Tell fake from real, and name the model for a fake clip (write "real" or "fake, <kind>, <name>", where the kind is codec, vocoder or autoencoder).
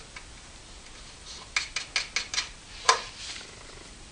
real